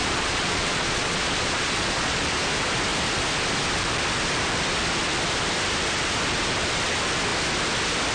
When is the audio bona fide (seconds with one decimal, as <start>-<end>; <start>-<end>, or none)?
2.2-8.1